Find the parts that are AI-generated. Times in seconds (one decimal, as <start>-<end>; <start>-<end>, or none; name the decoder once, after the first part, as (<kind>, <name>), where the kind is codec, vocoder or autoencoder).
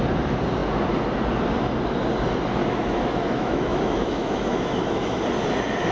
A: 2.6-5.2 (autoencoder, DAC-VAE)